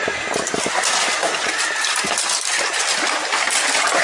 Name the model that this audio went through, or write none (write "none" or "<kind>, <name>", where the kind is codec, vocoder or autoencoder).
none